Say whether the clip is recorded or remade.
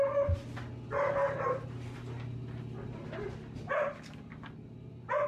recorded